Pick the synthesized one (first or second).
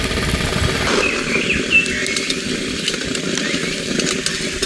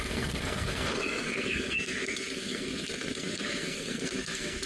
second